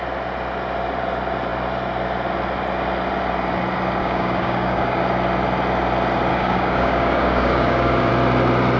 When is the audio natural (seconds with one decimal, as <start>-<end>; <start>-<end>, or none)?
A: 0.0-4.0; 5.0-6.3; 8.1-8.8